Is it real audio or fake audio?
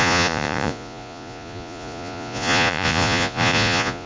fake